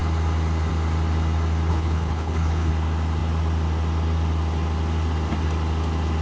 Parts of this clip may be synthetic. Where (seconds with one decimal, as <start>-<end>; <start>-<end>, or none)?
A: 1.7-2.7